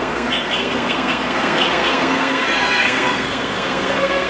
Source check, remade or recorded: remade